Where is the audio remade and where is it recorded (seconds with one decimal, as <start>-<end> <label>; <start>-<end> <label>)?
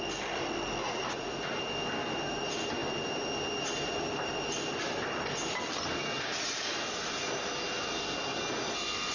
0.0-0.8 recorded; 0.8-1.6 remade; 1.6-9.1 recorded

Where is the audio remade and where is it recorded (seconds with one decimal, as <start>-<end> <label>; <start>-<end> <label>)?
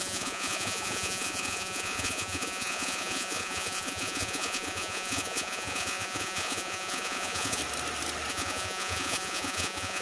0.0-7.6 remade; 7.6-8.3 recorded; 8.3-10.0 remade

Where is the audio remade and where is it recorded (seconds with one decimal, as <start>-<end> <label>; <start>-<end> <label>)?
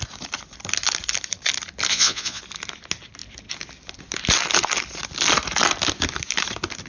0.0-1.9 recorded; 1.9-2.4 remade; 2.4-6.9 recorded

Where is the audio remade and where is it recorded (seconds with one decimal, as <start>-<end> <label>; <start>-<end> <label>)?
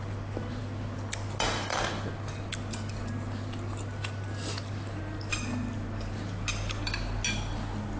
0.0-8.0 recorded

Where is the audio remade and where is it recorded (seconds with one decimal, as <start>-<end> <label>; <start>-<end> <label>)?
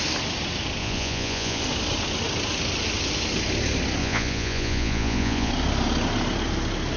0.0-0.8 recorded; 0.8-1.6 remade; 1.6-4.0 recorded; 4.0-5.5 remade; 5.5-7.0 recorded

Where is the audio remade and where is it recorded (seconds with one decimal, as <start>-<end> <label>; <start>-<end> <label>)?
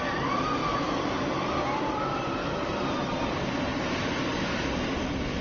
0.0-5.4 recorded